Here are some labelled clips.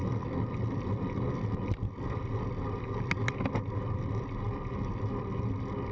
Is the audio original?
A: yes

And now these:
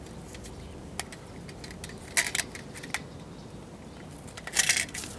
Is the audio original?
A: yes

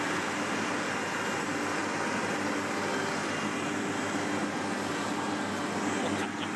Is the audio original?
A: yes